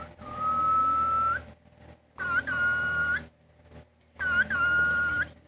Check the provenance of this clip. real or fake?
real